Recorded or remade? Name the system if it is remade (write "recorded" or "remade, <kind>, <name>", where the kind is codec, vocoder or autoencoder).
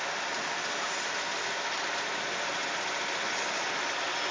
recorded